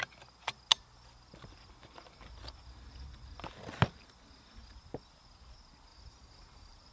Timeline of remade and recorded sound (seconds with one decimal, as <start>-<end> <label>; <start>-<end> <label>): 0.0-5.9 recorded; 5.9-6.9 remade